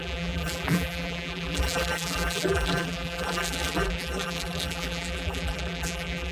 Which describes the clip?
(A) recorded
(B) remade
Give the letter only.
B